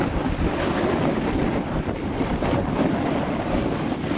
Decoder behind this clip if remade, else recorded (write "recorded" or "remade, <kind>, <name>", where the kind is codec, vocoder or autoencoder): remade, vocoder, BigVGAN v2